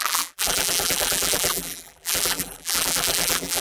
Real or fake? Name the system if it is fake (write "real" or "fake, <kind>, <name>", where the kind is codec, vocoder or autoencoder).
fake, vocoder, BigVGAN v2